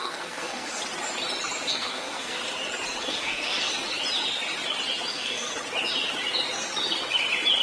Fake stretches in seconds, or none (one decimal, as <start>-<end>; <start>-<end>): 0.0-0.8; 1.7-2.4; 3.0-3.7; 5.1-5.5